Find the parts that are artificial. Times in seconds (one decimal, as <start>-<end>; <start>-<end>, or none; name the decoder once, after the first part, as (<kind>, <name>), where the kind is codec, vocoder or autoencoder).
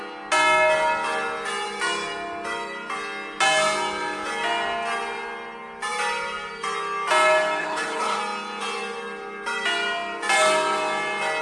7.6-8.2 (codec, HILCodec)